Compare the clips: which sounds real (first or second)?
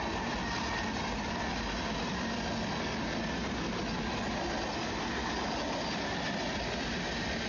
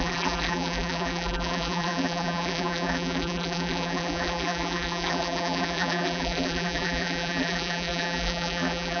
first